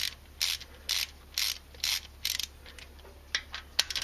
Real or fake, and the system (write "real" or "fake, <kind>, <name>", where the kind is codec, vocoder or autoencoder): real